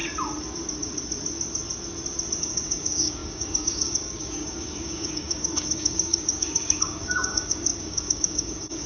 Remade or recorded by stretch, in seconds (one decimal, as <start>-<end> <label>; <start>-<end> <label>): 0.0-2.4 recorded; 2.4-8.9 remade